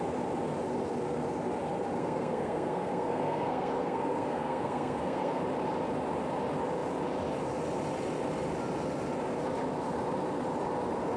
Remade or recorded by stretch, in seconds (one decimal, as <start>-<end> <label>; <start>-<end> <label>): 0.0-2.0 recorded; 2.0-5.4 remade; 5.4-11.2 recorded